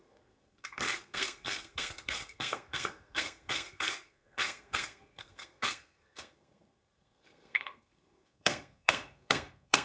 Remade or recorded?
remade